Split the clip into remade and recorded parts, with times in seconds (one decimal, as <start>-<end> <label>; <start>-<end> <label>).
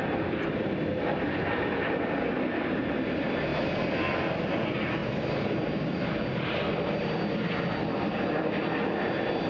0.0-9.5 recorded